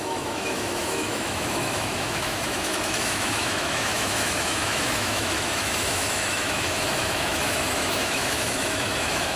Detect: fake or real fake